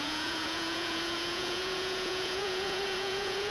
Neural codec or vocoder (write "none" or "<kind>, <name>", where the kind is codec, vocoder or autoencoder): vocoder, Vocos